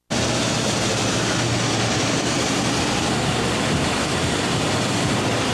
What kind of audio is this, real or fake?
real